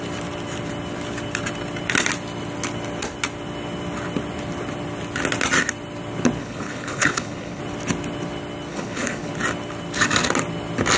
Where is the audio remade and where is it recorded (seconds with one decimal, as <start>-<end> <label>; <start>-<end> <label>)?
0.0-6.4 recorded; 6.4-7.6 remade; 7.6-8.7 recorded; 8.7-9.3 remade; 9.3-11.0 recorded